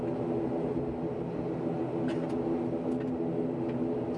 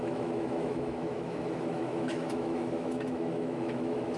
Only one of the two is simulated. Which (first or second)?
second